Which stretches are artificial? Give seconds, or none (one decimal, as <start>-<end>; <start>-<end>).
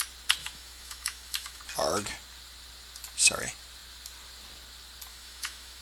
0.4-1.6; 5.1-5.8